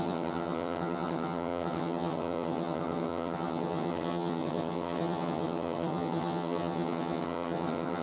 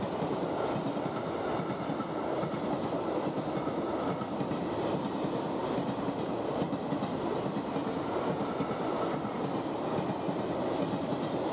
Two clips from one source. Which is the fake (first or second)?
first